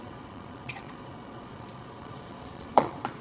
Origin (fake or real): fake